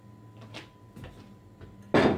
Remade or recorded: recorded